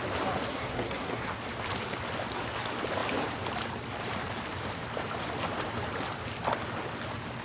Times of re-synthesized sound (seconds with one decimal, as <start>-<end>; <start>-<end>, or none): 0.5-1.4